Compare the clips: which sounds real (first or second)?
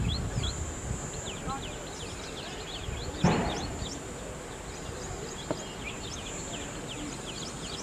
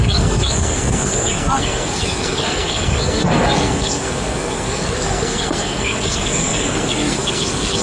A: first